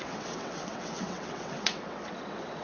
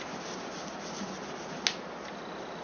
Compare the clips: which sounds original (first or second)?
second